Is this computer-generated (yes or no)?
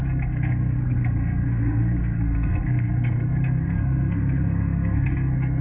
yes